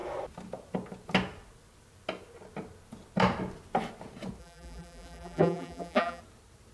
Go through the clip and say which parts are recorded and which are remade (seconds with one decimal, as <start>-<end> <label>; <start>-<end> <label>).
0.0-4.4 recorded; 4.4-6.2 remade; 6.2-6.7 recorded